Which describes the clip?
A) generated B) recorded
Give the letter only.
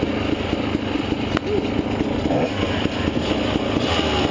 B